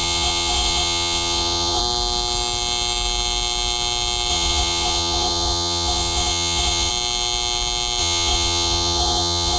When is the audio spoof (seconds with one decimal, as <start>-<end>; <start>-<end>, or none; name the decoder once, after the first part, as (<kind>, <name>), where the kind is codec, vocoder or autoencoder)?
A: 0.0-1.8 (vocoder, Vocos); 4.3-6.9; 8.0-9.6